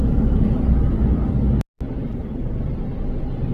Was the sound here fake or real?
real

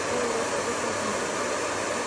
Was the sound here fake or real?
real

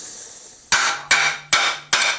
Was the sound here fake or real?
real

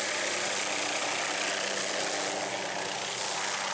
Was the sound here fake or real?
real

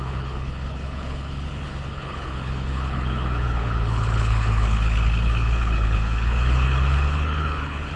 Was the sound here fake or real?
fake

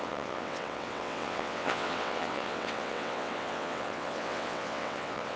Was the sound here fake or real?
fake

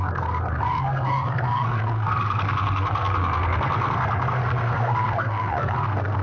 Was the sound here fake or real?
fake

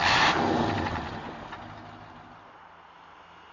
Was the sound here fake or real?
real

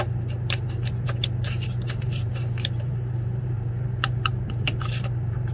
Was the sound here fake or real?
fake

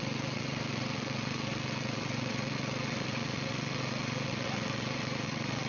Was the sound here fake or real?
fake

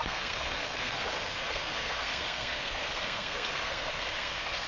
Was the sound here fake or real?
fake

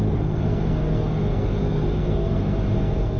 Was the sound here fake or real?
fake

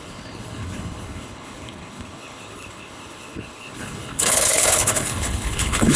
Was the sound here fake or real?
fake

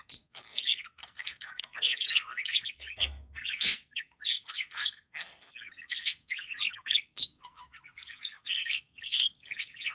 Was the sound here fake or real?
fake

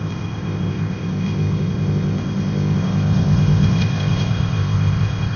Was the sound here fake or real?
fake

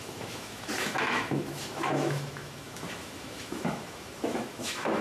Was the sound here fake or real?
fake